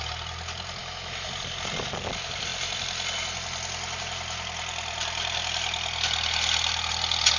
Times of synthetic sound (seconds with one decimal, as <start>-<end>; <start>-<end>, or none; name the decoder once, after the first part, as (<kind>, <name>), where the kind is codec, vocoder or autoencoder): 0.8-1.3 (autoencoder, DAC-VAE)